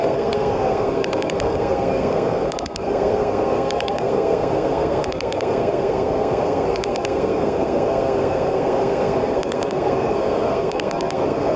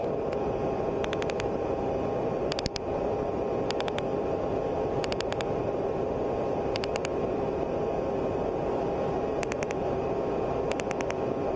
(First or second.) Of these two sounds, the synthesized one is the first